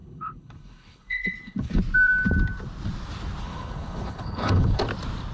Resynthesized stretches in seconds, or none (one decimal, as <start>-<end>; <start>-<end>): 0.0-1.8; 3.4-4.8